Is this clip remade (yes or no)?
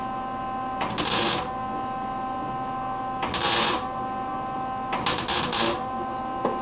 no